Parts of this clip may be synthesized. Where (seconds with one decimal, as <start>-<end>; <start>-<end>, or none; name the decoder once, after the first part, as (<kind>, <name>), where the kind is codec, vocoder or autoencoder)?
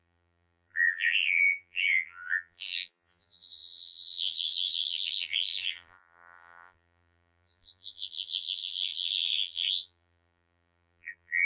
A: 0.0-11.5 (vocoder, BigVGAN v2)